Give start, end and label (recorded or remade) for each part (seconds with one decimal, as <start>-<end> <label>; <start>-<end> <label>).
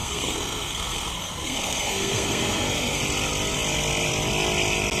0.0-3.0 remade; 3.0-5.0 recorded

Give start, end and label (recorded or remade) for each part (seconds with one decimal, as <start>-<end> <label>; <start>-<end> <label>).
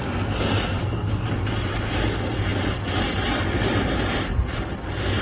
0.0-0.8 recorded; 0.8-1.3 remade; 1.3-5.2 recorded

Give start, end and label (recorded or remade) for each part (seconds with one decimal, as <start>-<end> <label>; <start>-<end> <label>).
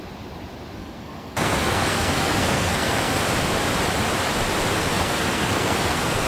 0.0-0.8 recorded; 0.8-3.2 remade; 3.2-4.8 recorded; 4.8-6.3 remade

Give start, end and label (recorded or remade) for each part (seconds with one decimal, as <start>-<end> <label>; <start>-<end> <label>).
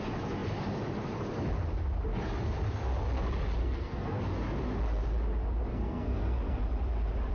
0.0-3.6 recorded; 3.6-4.2 remade; 4.2-5.7 recorded; 5.7-6.6 remade; 6.6-7.3 recorded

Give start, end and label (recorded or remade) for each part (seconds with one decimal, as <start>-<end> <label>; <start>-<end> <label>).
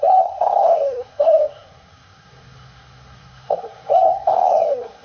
0.0-5.0 remade